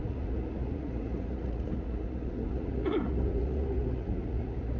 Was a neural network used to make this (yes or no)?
yes